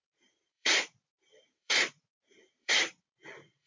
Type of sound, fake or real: fake